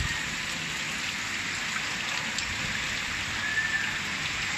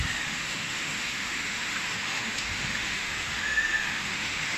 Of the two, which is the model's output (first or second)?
second